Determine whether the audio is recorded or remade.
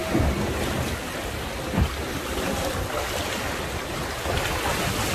recorded